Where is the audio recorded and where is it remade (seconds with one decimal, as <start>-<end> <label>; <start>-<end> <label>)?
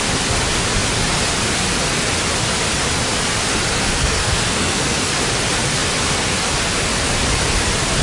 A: 0.0-4.0 recorded; 4.0-5.1 remade; 5.1-8.0 recorded